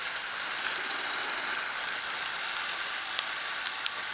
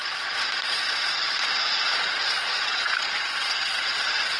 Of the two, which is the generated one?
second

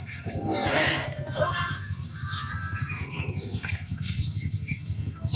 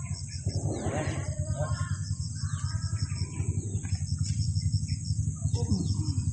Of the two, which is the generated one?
first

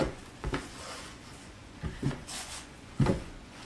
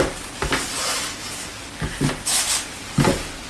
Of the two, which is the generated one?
first